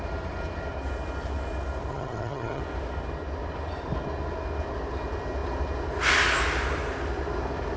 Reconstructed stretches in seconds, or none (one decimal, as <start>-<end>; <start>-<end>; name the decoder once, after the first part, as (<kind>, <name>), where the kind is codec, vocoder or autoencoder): 1.9-2.6 (vocoder, HiFi-GAN)